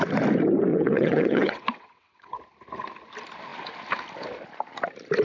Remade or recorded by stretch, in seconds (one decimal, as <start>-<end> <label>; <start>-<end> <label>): 0.0-0.7 recorded; 0.7-2.4 remade; 2.4-5.2 recorded